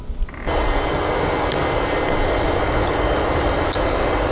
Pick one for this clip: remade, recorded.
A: recorded